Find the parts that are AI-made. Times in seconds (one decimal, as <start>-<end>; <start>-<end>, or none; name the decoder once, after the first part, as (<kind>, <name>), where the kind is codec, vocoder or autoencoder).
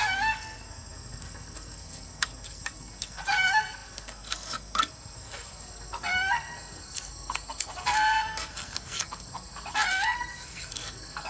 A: 0.0-11.3 (codec, SNAC)